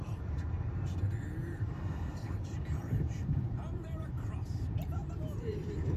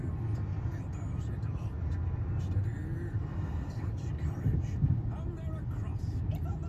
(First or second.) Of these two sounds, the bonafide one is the second